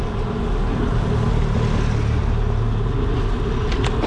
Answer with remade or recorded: recorded